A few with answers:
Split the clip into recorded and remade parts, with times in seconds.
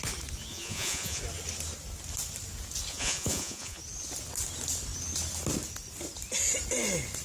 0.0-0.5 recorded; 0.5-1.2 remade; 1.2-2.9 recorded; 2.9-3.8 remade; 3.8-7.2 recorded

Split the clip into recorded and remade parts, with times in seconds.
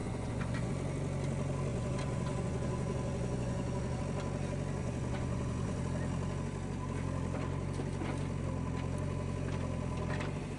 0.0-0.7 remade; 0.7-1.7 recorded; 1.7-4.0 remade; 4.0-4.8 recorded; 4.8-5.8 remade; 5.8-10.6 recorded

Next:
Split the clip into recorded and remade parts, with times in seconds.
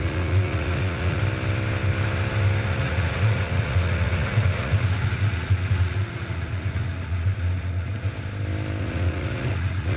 0.0-1.2 remade; 1.2-2.8 recorded; 2.8-8.1 remade; 8.1-8.8 recorded; 8.8-10.0 remade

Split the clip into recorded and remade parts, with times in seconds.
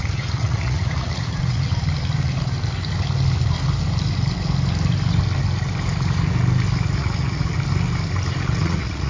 0.0-1.7 remade; 1.7-7.0 recorded; 7.0-7.5 remade; 7.5-8.5 recorded; 8.5-9.1 remade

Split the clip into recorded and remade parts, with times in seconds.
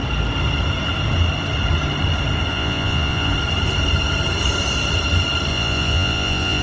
0.0-2.5 recorded; 2.5-3.3 remade; 3.3-5.5 recorded; 5.5-6.6 remade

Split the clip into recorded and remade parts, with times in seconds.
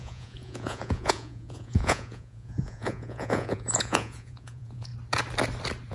0.0-4.9 remade; 4.9-5.9 recorded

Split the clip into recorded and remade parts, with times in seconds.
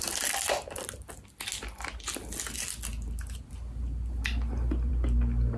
0.0-5.6 recorded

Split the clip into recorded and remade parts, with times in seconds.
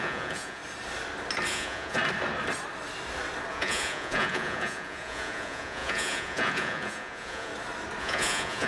0.0-0.6 remade; 0.6-1.5 recorded; 1.5-2.0 remade; 2.0-3.5 recorded; 3.5-7.5 remade; 7.5-8.0 recorded; 8.0-8.7 remade